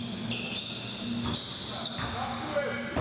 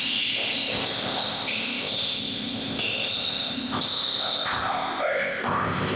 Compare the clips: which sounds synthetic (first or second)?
second